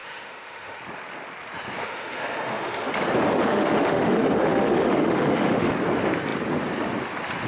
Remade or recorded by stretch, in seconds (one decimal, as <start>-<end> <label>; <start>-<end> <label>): 0.0-0.8 remade; 0.8-1.8 recorded; 1.8-2.9 remade; 2.9-3.5 recorded; 3.5-5.7 remade; 5.7-7.5 recorded